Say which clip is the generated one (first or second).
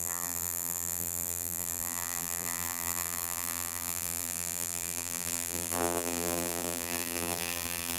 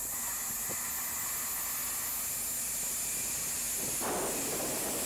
first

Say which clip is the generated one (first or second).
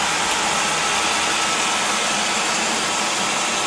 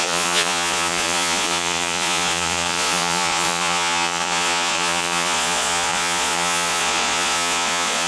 second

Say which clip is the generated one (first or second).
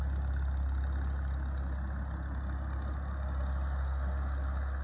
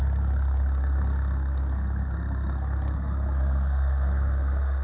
second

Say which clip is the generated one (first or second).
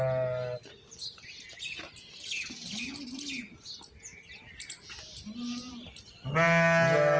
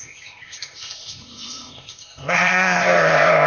second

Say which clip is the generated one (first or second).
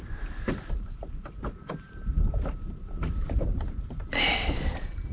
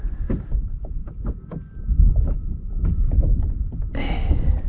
first